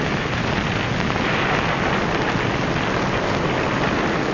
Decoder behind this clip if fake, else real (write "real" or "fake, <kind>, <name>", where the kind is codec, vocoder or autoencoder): real